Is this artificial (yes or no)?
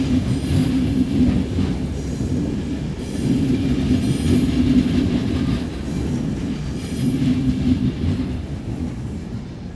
no